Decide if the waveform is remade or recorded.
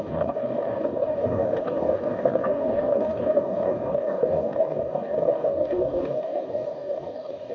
remade